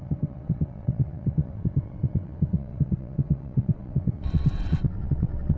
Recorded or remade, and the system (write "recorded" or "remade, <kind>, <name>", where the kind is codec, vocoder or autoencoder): remade, vocoder, WaveNeXt